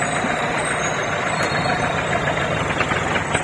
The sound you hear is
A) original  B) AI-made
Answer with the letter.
A